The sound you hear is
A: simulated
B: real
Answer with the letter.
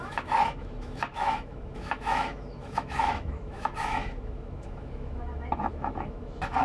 A